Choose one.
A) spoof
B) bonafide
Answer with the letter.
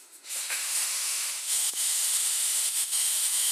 A